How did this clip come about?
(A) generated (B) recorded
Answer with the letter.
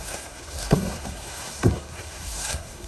A